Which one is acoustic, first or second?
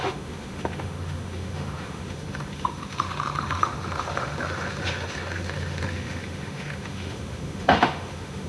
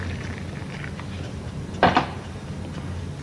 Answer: second